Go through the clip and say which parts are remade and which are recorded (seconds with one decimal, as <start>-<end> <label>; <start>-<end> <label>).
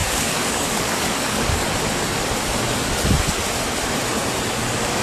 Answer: 0.0-1.6 remade; 1.6-4.6 recorded; 4.6-5.0 remade